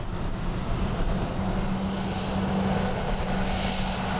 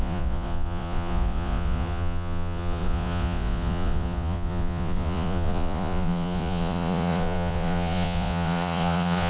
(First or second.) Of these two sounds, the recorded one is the first